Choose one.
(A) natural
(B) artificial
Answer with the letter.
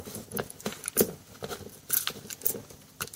A